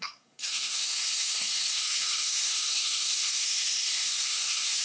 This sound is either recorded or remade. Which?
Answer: remade